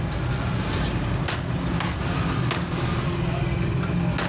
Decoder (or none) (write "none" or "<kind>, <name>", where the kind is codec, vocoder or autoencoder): none